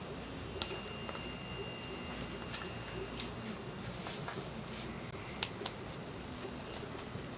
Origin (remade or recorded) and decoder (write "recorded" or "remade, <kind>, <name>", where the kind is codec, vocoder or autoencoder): recorded